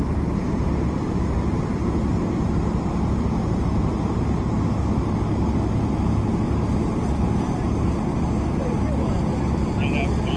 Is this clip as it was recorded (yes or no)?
yes